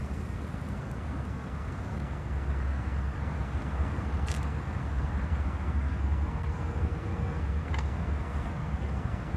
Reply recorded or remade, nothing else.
remade